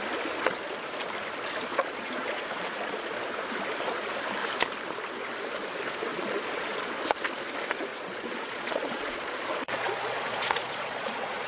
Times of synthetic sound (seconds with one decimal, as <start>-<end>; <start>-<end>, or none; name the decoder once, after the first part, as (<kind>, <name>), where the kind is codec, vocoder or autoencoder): 1.7-3.2 (vocoder, Vocos); 6.1-6.9; 7.9-11.5